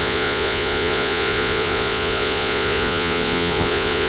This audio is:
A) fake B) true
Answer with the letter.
A